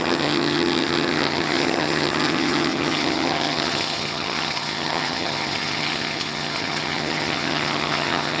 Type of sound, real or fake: fake